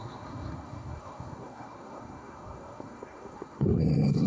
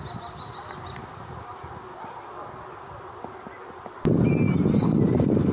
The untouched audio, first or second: second